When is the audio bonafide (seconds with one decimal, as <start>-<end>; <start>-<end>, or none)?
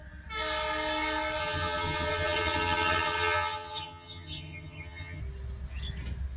0.0-1.4; 5.2-6.4